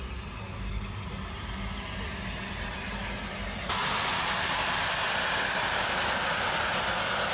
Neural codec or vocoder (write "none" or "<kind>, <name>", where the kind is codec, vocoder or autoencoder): none